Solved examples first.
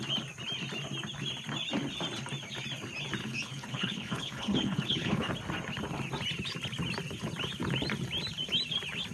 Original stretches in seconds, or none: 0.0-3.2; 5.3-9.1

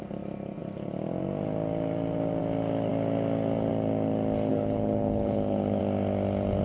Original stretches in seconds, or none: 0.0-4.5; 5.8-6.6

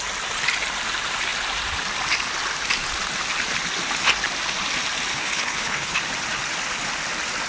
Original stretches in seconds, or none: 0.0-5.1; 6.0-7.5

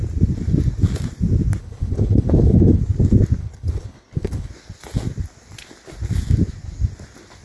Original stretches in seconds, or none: 0.0-1.6; 2.8-3.4; 4.5-7.4